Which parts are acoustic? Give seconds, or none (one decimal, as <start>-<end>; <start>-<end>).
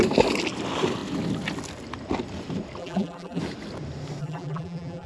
0.0-2.8; 3.4-4.2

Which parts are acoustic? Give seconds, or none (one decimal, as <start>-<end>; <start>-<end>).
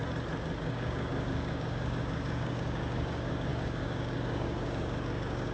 0.0-0.6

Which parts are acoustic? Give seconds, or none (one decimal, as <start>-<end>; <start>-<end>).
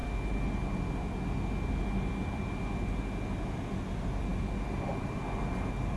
0.0-6.0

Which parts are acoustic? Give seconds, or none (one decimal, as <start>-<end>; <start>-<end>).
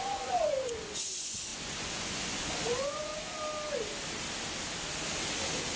3.1-5.8